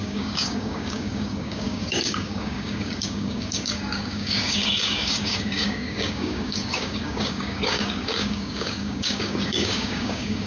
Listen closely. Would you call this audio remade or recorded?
remade